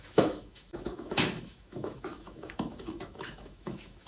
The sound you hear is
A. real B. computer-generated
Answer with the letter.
B